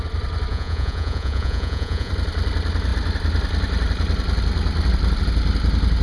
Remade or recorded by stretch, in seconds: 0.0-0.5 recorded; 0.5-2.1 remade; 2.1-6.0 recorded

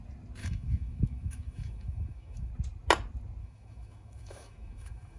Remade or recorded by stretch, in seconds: 0.0-0.4 recorded; 0.4-2.5 remade; 2.5-3.4 recorded; 3.4-5.2 remade

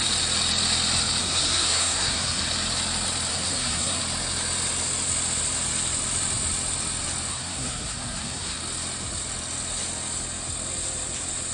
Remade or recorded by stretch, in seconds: 0.0-1.2 recorded; 1.2-2.4 remade; 2.4-3.3 recorded; 3.3-4.0 remade; 4.0-7.3 recorded; 7.3-8.6 remade; 8.6-11.5 recorded

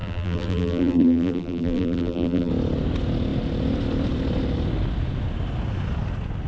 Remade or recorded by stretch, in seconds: 0.0-2.5 remade; 2.5-6.5 recorded

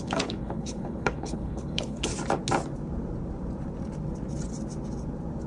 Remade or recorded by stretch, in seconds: 0.0-2.1 remade; 2.1-5.5 recorded